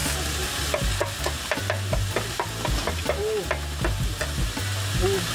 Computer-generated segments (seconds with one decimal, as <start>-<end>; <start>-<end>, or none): none